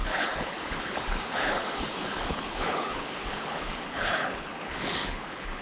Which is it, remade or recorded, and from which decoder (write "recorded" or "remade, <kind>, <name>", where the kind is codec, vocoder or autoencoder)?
remade, codec, HILCodec